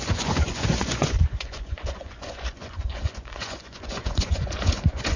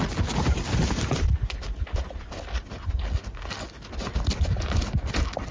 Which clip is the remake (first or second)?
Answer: first